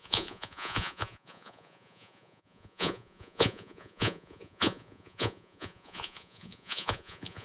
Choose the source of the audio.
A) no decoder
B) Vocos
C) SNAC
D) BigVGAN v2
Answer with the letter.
B